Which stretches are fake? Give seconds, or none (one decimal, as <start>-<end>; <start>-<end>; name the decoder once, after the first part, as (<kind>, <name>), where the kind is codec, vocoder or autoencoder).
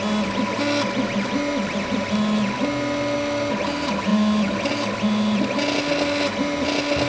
none